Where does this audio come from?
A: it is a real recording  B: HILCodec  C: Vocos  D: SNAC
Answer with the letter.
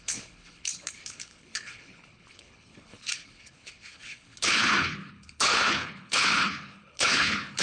B